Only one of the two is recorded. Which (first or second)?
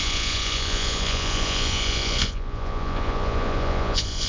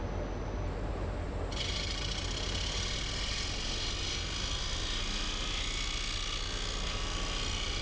second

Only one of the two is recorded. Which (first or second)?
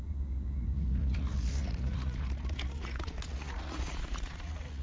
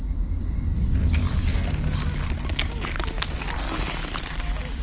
second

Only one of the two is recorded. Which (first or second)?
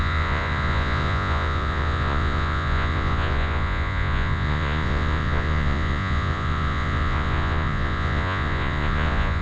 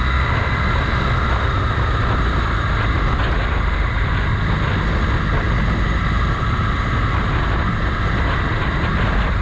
second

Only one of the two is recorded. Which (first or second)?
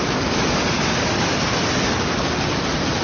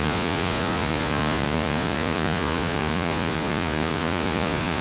first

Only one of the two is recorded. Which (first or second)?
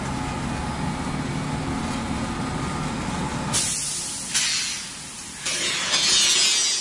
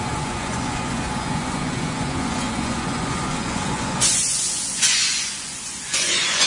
first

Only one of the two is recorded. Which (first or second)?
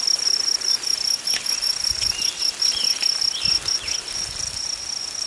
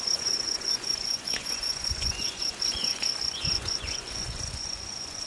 first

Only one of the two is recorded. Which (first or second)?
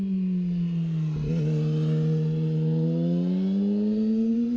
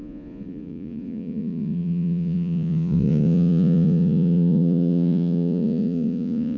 first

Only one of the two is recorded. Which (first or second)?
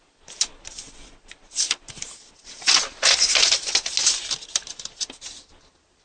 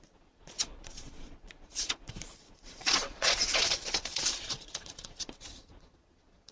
first